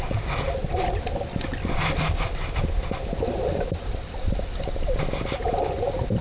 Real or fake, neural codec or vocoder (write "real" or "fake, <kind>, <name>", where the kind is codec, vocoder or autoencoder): real